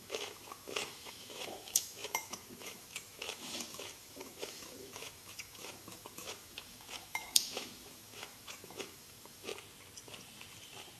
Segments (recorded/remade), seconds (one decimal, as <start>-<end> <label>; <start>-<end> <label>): 0.0-9.5 remade; 9.5-11.0 recorded